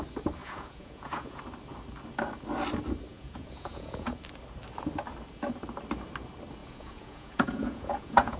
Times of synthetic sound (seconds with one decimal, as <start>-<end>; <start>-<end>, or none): 0.4-1.4; 3.1-4.2; 6.6-8.4